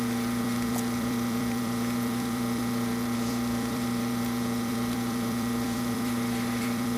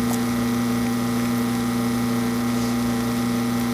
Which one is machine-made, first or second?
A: first